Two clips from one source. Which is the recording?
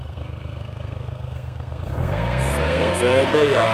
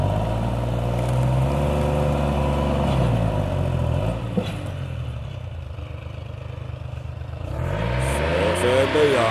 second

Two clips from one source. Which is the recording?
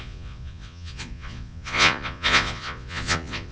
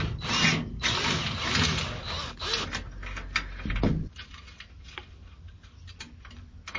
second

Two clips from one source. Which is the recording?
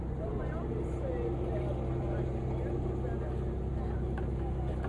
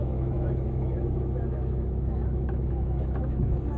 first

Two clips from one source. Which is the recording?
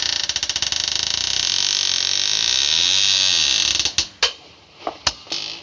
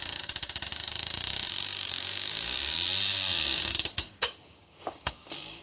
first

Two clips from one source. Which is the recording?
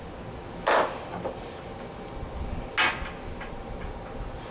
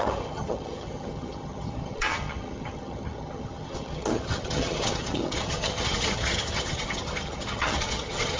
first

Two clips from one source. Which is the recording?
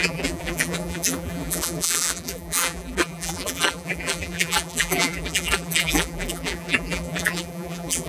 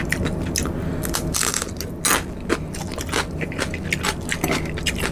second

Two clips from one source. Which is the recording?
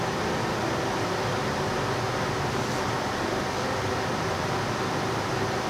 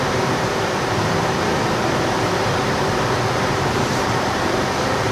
first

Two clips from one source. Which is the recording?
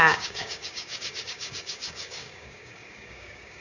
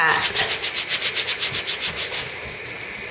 second